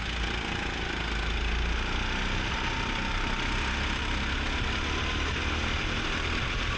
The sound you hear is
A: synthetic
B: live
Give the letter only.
B